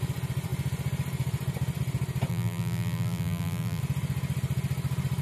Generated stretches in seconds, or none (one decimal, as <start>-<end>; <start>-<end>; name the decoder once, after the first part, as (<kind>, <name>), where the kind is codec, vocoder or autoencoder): 2.3-3.8 (vocoder, BigVGAN v2)